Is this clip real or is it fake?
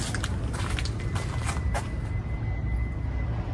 real